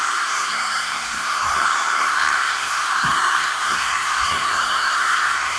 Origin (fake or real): fake